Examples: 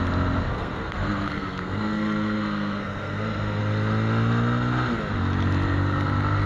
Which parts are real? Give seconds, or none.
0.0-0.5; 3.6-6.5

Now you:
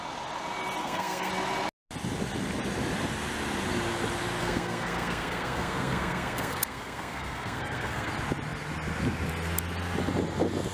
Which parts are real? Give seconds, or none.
0.0-0.8; 1.3-4.4; 8.1-10.7